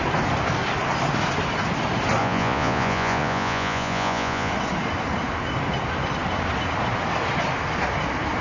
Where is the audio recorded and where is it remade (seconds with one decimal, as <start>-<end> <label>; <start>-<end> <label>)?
0.0-2.2 recorded; 2.2-4.5 remade; 4.5-8.4 recorded